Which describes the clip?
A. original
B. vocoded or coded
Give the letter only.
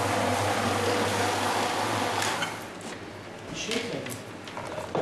A